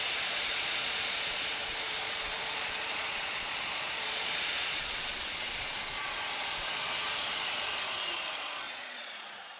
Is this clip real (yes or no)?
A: no